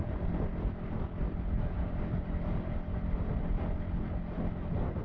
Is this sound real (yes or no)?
yes